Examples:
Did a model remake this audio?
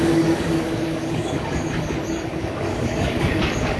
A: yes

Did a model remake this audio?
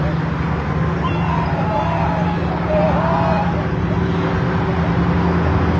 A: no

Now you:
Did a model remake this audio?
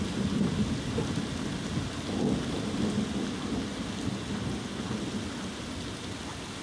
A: no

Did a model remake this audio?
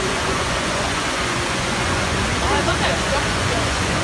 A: yes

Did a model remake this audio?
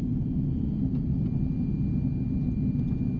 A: no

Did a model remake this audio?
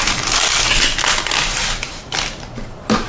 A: no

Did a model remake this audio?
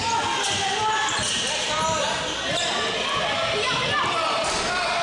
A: no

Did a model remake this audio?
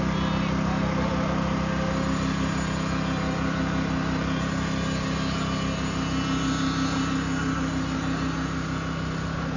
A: no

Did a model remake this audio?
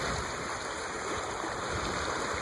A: no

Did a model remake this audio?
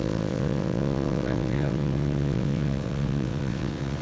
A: yes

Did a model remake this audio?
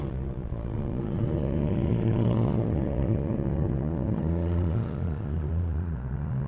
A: yes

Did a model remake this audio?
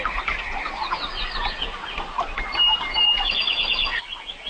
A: no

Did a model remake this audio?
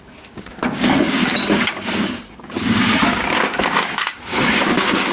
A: yes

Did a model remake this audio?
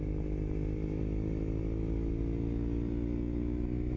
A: no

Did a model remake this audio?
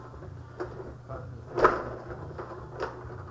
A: no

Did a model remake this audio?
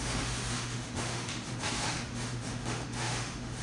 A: yes